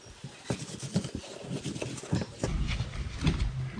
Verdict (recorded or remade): recorded